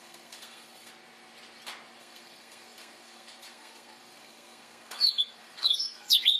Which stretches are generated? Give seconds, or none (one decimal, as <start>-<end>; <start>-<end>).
0.0-0.9; 2.0-6.4